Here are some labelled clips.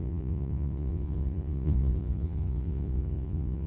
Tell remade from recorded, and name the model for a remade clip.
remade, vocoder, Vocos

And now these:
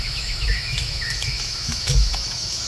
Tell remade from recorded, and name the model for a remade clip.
remade, autoencoder, DAC-VAE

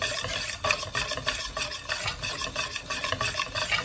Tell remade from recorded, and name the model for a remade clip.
recorded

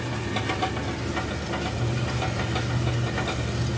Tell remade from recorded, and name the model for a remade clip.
recorded